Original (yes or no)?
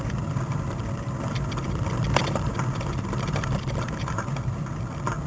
no